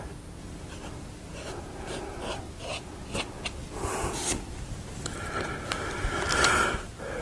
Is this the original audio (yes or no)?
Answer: yes